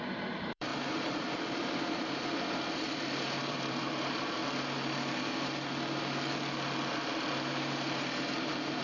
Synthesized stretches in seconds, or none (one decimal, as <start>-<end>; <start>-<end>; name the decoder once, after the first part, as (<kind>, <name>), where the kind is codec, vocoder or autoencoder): 0.0-0.7 (vocoder, BigVGAN v2); 1.5-4.4; 8.4-8.8